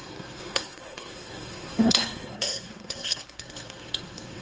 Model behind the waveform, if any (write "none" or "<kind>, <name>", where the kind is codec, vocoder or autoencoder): codec, SNAC